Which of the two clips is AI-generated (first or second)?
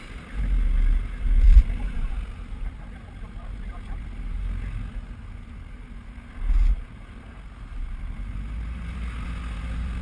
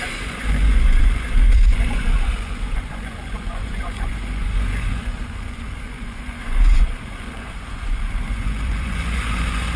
second